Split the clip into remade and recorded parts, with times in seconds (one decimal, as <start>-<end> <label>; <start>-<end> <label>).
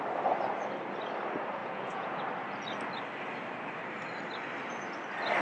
0.0-1.6 recorded; 1.6-2.2 remade; 2.2-5.4 recorded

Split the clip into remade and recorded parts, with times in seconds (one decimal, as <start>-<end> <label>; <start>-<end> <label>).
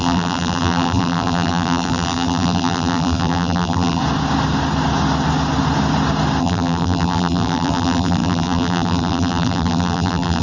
0.0-4.0 remade; 4.0-6.4 recorded; 6.4-10.4 remade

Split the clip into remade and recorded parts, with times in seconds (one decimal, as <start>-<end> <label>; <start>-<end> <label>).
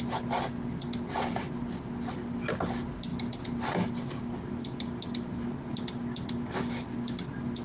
0.0-7.6 recorded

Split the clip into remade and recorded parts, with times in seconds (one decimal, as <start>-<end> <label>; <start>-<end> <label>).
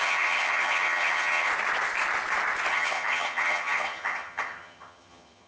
0.0-1.5 remade; 1.5-2.7 recorded; 2.7-5.5 remade